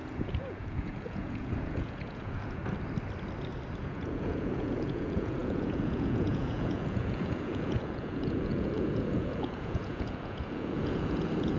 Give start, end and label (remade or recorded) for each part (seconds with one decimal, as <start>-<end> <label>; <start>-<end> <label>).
0.0-2.6 remade; 2.6-3.8 recorded; 3.8-11.6 remade